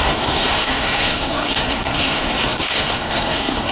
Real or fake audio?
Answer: fake